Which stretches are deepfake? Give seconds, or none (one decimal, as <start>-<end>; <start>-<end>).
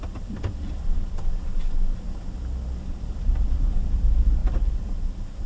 4.4-5.5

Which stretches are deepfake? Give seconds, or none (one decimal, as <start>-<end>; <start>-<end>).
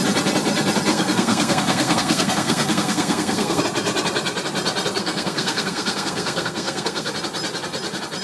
0.9-3.6; 5.0-7.1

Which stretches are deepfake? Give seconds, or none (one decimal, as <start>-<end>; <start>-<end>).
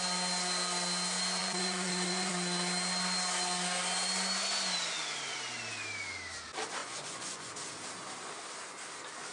1.4-2.3; 6.8-7.5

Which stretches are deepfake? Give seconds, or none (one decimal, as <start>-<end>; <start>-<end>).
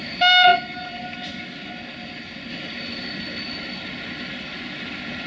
none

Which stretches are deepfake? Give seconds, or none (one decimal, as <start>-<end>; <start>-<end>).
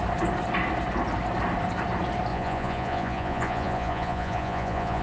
2.3-5.0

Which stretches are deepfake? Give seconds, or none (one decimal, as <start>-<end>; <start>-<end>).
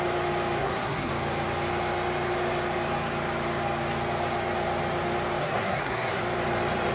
0.6-1.1; 5.4-6.2